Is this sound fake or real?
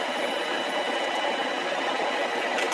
real